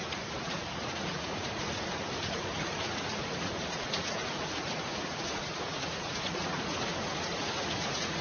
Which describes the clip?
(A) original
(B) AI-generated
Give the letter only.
B